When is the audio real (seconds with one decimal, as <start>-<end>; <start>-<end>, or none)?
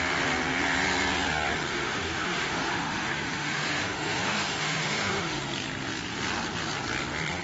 0.0-1.7; 5.4-7.4